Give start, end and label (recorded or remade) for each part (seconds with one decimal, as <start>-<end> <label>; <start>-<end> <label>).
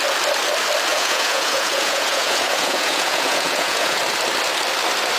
0.0-0.9 recorded; 0.9-4.0 remade; 4.0-5.2 recorded